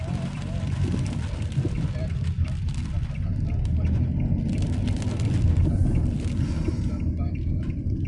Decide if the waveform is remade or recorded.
remade